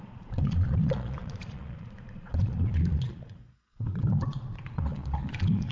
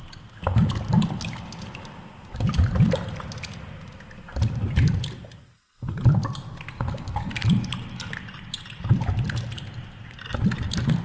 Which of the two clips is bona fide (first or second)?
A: second